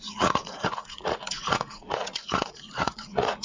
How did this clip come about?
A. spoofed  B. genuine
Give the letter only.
A